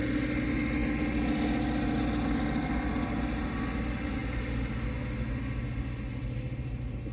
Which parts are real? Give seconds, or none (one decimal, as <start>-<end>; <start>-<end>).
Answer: 0.0-7.1

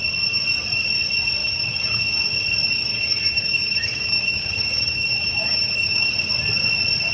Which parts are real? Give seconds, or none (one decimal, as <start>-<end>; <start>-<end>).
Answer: 0.0-1.4; 2.0-2.9; 6.1-7.1

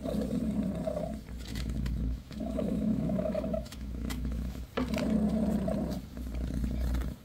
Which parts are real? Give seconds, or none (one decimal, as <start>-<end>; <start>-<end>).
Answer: 0.0-1.5; 4.6-7.2

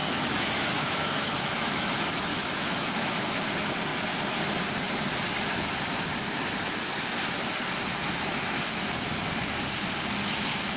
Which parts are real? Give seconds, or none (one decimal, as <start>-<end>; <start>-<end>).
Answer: 1.9-2.3; 3.4-10.8

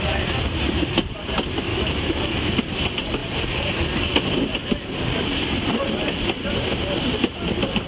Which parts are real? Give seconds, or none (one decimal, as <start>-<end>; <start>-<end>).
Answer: 0.0-1.7; 2.5-7.9

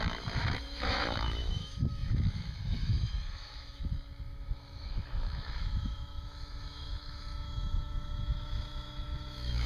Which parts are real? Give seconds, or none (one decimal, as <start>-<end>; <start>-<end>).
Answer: none

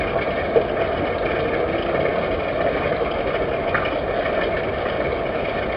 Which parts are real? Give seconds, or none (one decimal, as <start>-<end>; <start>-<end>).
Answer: 0.0-5.8

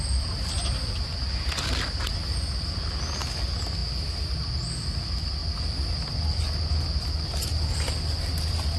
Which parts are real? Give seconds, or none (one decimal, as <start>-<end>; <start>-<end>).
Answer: 0.0-8.8